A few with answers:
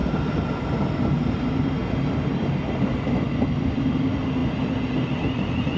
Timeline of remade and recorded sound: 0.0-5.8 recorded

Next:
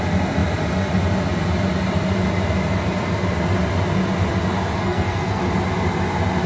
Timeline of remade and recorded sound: 0.0-4.8 recorded; 4.8-5.4 remade; 5.4-6.5 recorded

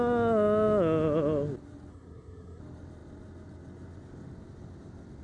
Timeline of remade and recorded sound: 0.0-1.9 recorded; 1.9-2.6 remade; 2.6-5.2 recorded

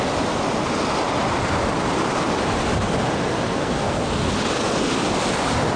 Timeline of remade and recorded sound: 0.0-3.5 recorded; 3.5-4.0 remade; 4.0-5.8 recorded